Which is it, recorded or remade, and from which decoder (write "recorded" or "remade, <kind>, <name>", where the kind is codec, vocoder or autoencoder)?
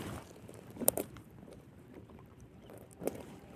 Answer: remade, vocoder, BigVGAN v2